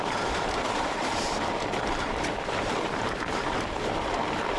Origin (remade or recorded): remade